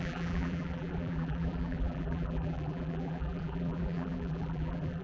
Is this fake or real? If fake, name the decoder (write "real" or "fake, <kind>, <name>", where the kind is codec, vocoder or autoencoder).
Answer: fake, vocoder, BigVGAN v2